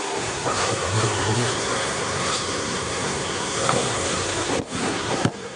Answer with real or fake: fake